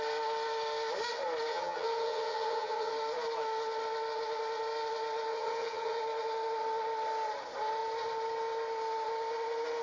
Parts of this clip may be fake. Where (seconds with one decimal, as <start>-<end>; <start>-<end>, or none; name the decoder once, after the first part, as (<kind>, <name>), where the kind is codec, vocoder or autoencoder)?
1.5-2.9 (vocoder, HiFi-GAN); 5.3-6.0